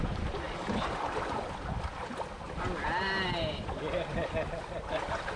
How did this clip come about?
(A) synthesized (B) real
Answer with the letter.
B